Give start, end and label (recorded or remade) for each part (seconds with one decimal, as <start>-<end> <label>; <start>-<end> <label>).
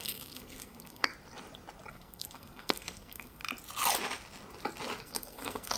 0.0-1.1 remade; 1.1-1.9 recorded; 1.9-3.4 remade; 3.4-5.0 recorded; 5.0-5.8 remade